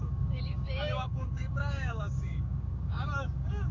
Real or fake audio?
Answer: fake